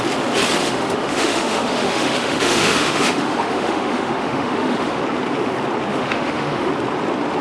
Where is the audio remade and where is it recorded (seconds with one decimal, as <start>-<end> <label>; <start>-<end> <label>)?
0.0-0.6 recorded; 0.6-5.0 remade; 5.0-5.9 recorded; 5.9-6.7 remade; 6.7-7.4 recorded